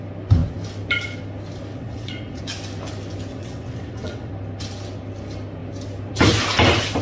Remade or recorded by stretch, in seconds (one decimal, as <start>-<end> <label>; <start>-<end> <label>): 0.0-1.7 recorded; 1.7-2.4 remade; 2.4-3.3 recorded; 3.3-4.3 remade; 4.3-7.0 recorded